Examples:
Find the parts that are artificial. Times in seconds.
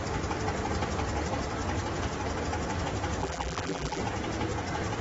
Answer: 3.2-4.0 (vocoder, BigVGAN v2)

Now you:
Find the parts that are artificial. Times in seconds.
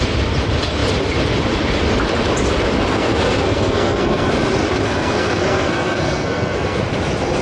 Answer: 2.9-4.3 (codec, SNAC); 4.8-6.8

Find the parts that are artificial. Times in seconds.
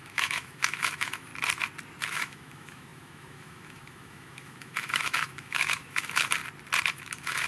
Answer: 0.0-1.3 (autoencoder, DAC-VAE); 2.0-6.4; 6.9-7.5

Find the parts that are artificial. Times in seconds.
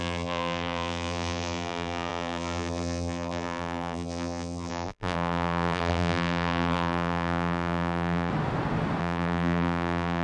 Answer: 0.0-8.3 (vocoder, BigVGAN v2); 9.0-10.2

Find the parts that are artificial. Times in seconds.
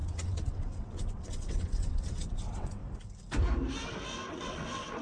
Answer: 0.0-2.8 (vocoder, WaveNeXt); 4.3-5.0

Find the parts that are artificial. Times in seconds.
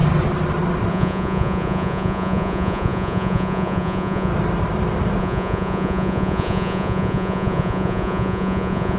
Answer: 0.9-4.3 (vocoder, Vocos); 5.2-9.0